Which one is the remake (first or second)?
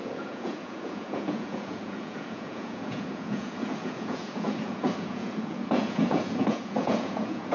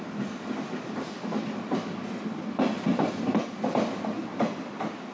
first